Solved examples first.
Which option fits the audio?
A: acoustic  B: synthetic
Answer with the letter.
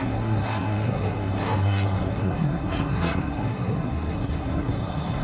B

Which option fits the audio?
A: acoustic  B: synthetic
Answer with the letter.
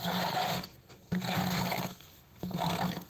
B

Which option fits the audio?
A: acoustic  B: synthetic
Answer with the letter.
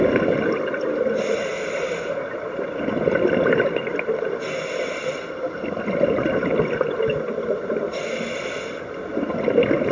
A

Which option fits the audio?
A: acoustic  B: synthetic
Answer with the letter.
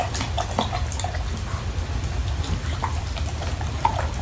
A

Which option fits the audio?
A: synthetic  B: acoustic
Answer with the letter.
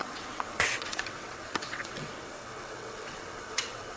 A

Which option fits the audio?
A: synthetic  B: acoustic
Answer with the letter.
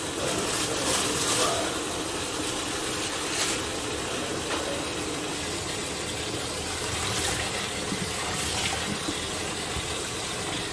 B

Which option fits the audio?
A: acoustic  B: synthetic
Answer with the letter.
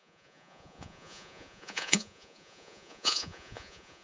B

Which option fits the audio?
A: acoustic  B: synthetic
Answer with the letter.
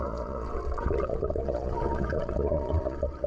B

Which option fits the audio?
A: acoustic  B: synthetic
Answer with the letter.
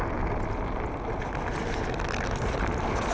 A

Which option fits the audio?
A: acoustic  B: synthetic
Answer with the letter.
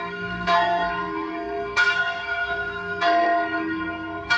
B